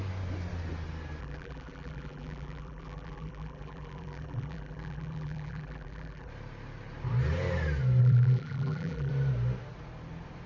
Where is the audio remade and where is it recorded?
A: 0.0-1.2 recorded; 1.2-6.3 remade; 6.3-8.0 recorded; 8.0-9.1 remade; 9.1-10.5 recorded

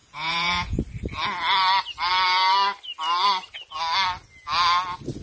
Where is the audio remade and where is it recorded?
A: 0.0-0.8 remade; 0.8-5.2 recorded

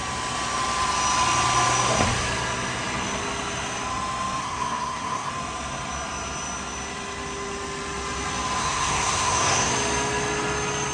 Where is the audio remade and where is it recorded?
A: 0.0-4.4 recorded; 4.4-5.3 remade; 5.3-8.6 recorded; 8.6-9.7 remade; 9.7-10.9 recorded

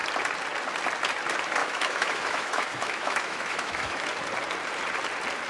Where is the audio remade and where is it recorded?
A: 0.0-1.6 recorded; 1.6-4.1 remade; 4.1-5.5 recorded

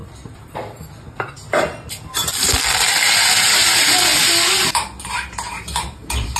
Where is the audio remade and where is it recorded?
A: 0.0-3.5 recorded; 3.5-4.1 remade; 4.1-5.0 recorded; 5.0-6.4 remade